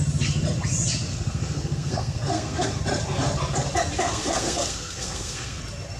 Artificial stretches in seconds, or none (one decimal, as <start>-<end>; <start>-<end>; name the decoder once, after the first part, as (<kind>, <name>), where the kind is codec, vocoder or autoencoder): 1.1-2.8 (codec, SNAC); 4.0-5.6